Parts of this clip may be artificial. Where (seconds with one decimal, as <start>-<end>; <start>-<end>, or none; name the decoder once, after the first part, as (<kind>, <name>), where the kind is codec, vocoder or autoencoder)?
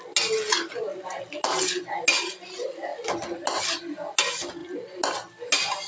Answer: none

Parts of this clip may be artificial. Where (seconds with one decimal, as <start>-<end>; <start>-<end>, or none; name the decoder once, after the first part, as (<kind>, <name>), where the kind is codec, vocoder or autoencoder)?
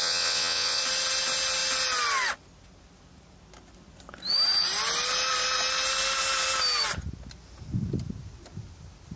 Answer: 0.0-0.8 (vocoder, WaveNeXt)